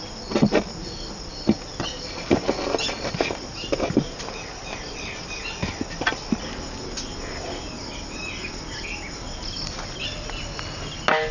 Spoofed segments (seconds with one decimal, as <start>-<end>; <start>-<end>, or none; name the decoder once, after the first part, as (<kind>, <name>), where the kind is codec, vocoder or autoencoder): none